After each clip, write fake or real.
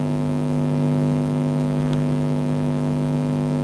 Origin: fake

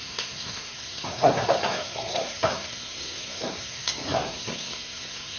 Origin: fake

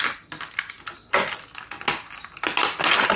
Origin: real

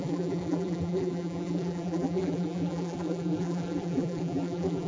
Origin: fake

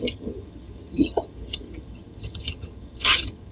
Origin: fake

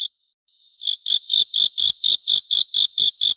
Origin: fake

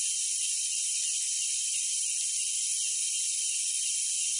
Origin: real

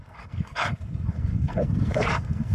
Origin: fake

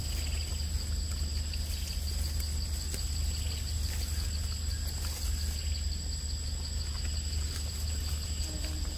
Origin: real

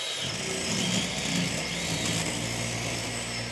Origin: real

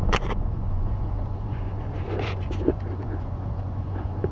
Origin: fake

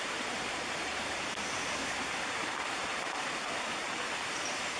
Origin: fake